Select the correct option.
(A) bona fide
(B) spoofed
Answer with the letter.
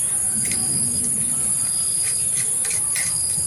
A